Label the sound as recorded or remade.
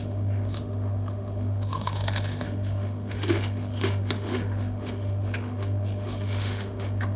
remade